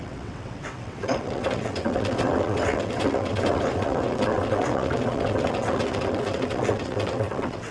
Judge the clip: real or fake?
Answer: fake